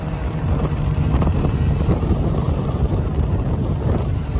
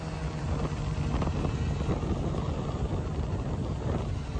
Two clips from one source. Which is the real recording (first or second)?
second